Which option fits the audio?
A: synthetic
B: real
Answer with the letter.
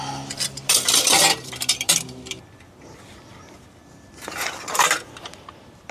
B